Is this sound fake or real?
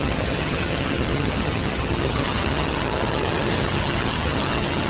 fake